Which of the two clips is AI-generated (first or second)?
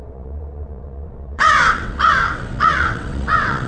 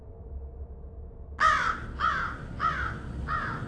first